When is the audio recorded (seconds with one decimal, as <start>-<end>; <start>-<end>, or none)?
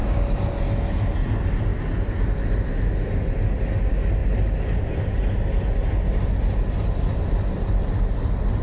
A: 0.6-8.6